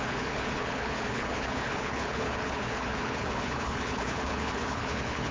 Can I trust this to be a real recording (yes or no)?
no